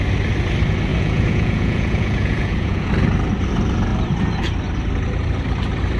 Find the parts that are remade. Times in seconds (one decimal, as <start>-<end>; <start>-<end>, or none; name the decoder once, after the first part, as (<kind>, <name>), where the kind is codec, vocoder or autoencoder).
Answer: 0.9-2.9 (vocoder, Vocos)